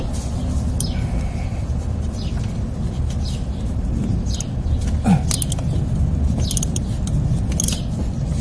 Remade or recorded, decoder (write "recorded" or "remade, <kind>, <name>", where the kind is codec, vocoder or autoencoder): recorded